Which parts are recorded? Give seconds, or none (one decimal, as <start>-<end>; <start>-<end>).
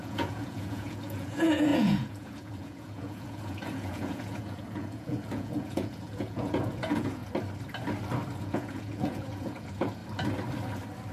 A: 7.2-8.4; 10.0-11.1